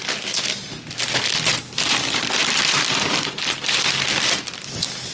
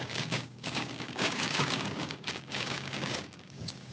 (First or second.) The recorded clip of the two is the first